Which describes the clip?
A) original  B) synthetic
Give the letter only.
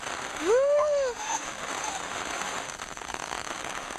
B